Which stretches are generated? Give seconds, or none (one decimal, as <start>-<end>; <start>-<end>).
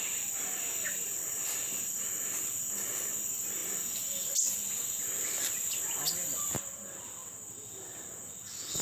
none